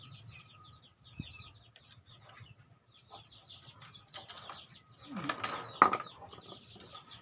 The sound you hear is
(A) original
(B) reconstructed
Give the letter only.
A